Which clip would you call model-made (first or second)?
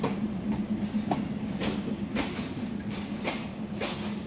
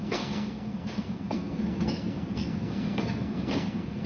second